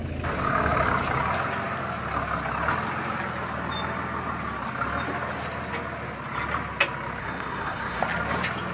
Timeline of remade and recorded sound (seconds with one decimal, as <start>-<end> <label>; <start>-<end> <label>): 0.0-7.2 recorded; 7.2-8.0 remade; 8.0-8.7 recorded